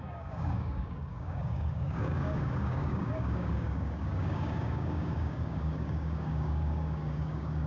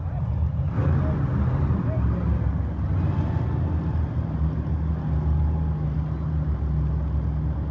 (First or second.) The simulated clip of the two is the first